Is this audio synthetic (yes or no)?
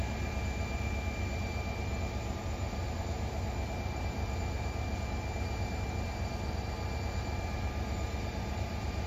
yes